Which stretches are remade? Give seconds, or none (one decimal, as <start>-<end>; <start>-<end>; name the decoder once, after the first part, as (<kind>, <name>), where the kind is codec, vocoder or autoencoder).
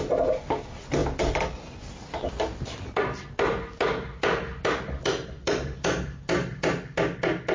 none